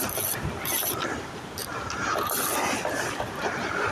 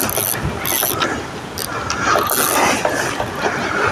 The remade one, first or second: first